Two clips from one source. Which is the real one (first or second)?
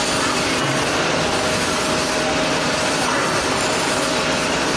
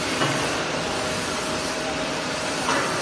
first